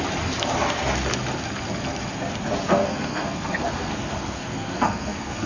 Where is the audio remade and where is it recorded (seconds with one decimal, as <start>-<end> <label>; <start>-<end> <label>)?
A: 0.0-2.8 recorded; 2.8-5.5 remade